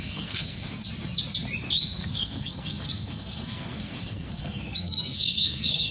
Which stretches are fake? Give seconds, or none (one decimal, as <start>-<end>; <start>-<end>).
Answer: 0.0-0.8; 1.8-5.9